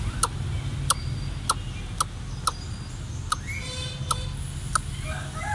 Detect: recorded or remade recorded